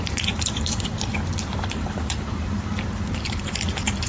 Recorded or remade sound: remade